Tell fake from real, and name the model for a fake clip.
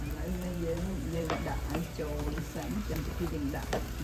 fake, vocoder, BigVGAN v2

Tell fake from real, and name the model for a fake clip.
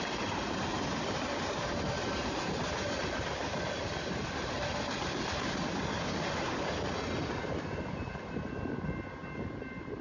real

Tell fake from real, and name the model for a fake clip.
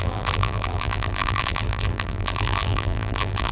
fake, vocoder, BigVGAN v2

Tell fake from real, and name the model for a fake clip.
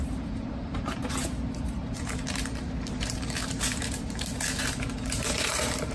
fake, vocoder, BigVGAN v2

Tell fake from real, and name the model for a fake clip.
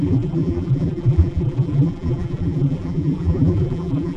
fake, vocoder, BigVGAN v2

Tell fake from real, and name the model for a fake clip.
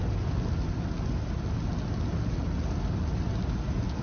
real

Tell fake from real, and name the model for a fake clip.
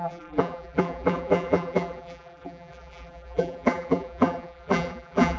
fake, vocoder, BigVGAN v2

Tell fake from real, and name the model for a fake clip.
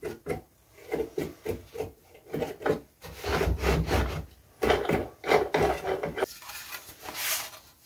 real